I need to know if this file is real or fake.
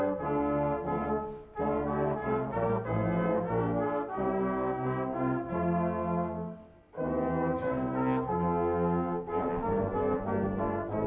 real